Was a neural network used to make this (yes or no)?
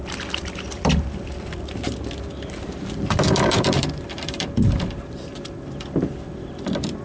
yes